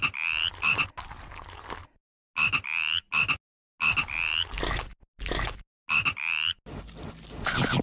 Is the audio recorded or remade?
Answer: recorded